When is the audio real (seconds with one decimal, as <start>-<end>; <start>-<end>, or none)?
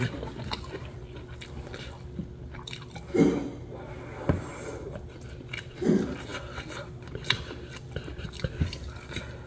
0.0-9.5